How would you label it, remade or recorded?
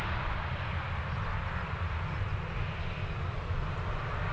recorded